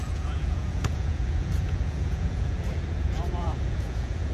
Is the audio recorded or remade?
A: remade